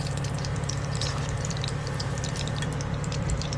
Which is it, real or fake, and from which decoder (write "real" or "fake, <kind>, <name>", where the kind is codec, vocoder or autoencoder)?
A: fake, vocoder, BigVGAN v2